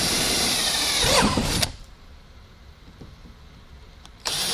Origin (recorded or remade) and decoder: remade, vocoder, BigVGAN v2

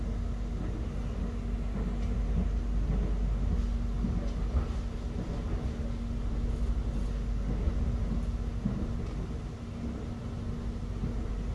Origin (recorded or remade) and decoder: recorded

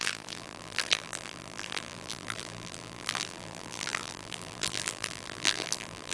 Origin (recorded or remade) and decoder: remade, vocoder, BigVGAN v2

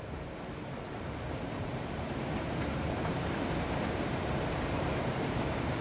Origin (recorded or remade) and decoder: remade, vocoder, BigVGAN v2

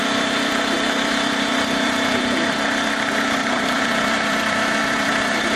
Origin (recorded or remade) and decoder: remade, vocoder, BigVGAN v2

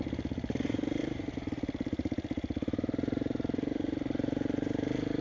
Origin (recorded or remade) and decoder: remade, vocoder, BigVGAN v2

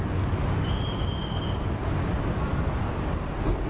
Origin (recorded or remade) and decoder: recorded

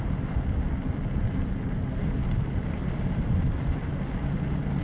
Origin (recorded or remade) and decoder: remade, vocoder, BigVGAN v2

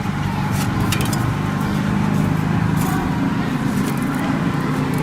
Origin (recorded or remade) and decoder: recorded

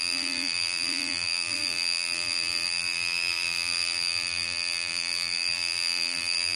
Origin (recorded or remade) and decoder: remade, vocoder, BigVGAN v2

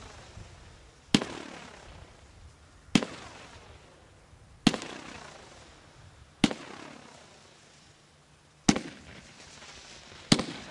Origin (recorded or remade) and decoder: recorded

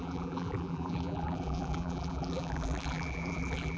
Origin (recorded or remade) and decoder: remade, vocoder, BigVGAN v2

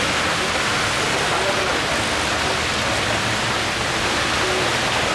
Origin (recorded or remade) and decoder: recorded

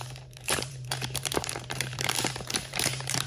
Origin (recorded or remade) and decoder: remade, vocoder, BigVGAN v2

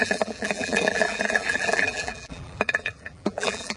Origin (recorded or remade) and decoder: remade, vocoder, BigVGAN v2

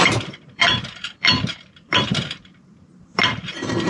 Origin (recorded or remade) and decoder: remade, vocoder, BigVGAN v2